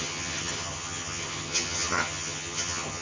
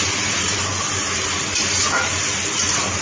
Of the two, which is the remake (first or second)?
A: first